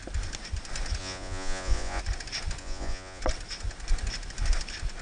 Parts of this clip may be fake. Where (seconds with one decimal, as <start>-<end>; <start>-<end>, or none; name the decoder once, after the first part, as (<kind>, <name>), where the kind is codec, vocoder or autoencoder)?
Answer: 1.0-2.0 (vocoder, Vocos); 2.6-3.2